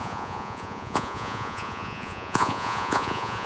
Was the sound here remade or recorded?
remade